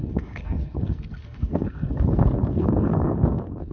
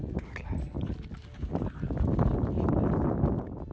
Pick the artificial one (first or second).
first